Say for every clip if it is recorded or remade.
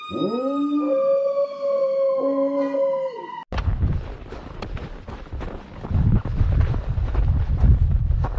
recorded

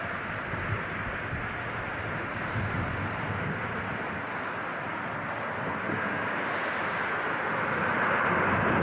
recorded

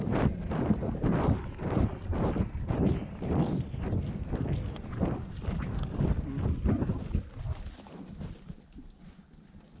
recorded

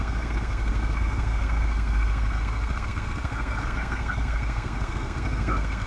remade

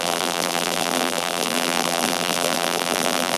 remade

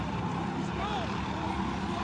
remade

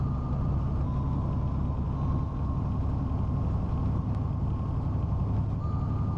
recorded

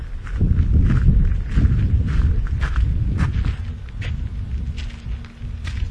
recorded